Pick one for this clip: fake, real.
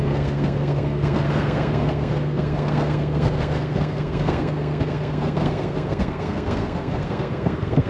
fake